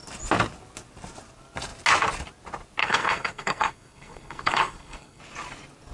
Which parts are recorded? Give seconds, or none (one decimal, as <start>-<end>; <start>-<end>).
0.0-2.8; 5.2-5.9